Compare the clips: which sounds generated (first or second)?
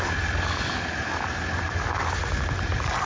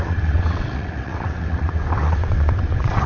second